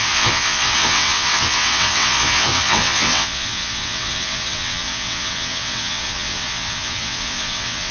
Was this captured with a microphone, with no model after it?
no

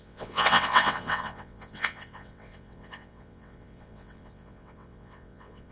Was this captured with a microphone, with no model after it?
no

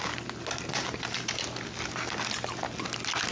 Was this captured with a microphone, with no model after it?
yes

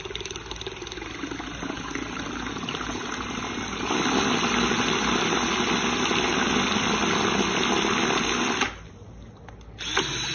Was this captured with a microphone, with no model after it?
yes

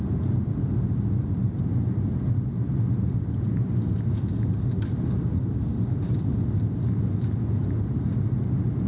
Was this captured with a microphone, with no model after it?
yes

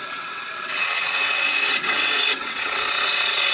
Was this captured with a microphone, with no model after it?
no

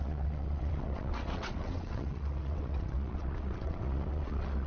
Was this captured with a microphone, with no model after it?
no